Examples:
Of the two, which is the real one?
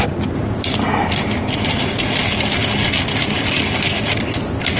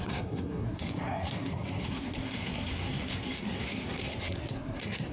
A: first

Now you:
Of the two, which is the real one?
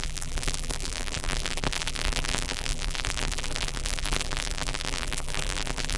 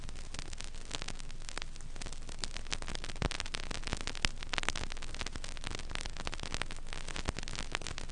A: second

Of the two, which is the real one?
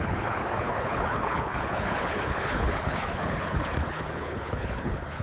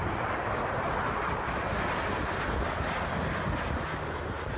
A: second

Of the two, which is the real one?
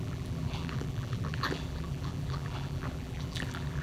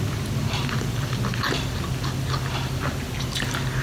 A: second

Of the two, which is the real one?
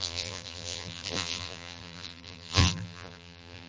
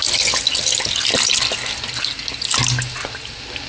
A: second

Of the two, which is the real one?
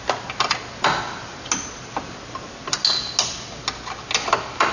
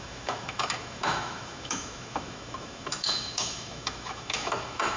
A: first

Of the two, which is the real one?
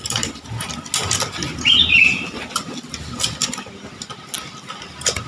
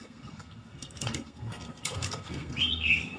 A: first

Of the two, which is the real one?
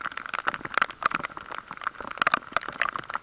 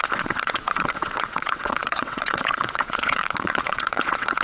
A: first